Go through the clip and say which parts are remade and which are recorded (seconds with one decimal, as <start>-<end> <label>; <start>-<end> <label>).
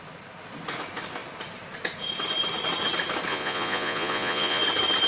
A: 0.0-3.3 recorded; 3.3-4.6 remade; 4.6-5.1 recorded